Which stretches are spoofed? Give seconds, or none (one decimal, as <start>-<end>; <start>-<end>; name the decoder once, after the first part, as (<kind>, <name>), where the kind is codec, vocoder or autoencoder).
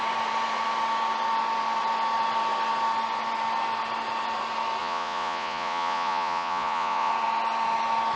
4.8-7.1 (vocoder, Vocos)